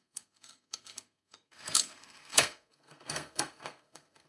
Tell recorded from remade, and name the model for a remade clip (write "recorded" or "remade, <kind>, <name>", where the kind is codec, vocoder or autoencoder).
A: remade, codec, SNAC